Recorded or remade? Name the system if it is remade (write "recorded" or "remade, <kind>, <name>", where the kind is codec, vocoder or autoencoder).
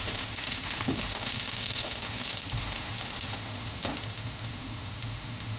remade, autoencoder, DAC-VAE